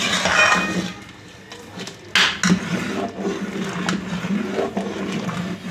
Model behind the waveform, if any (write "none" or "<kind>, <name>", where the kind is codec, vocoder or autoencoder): none